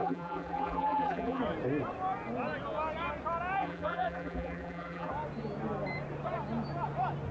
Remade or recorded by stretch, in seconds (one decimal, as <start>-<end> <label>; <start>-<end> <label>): 0.0-1.4 remade; 1.4-3.6 recorded; 3.6-5.1 remade; 5.1-7.3 recorded